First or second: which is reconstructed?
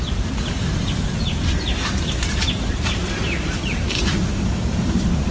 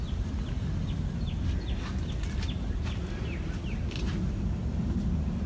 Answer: first